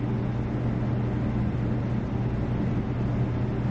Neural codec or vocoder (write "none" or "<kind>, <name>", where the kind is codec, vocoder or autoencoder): none